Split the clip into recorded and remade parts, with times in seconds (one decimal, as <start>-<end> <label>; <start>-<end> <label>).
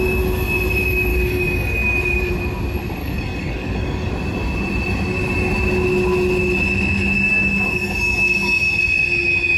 0.0-1.1 recorded; 1.1-2.3 remade; 2.3-3.0 recorded; 3.0-4.1 remade; 4.1-7.3 recorded; 7.3-8.8 remade; 8.8-9.6 recorded